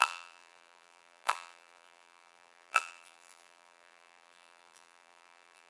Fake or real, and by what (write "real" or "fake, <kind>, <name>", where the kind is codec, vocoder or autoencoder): fake, vocoder, BigVGAN v2